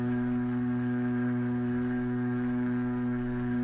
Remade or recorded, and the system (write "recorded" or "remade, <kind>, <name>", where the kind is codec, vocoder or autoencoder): remade, codec, SNAC